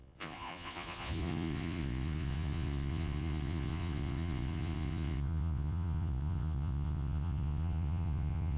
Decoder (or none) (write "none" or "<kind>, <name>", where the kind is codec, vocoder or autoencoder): vocoder, Vocos